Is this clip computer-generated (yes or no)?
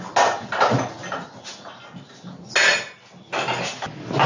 no